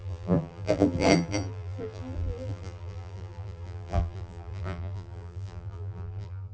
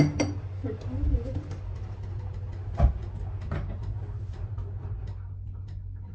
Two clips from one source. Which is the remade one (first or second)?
first